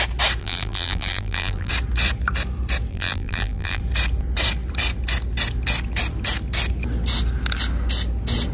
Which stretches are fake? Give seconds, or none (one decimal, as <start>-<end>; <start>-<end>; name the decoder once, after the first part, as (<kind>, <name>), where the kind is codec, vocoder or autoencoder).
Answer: 0.4-1.7 (vocoder, BigVGAN v2); 2.9-3.8